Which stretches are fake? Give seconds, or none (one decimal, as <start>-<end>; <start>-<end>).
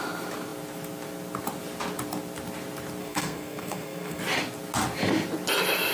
3.0-4.2